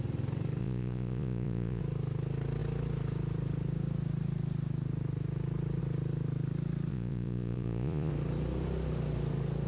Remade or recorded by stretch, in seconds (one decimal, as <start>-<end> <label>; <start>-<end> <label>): 0.0-0.6 recorded; 0.6-1.8 remade; 1.8-6.9 recorded; 6.9-8.1 remade; 8.1-9.7 recorded